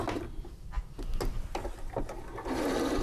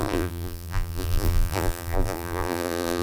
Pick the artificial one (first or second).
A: second